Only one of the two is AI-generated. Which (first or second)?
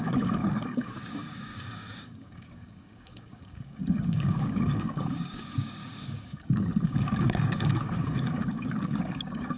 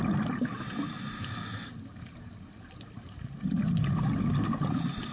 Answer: first